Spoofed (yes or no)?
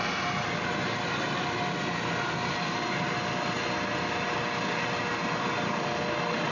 no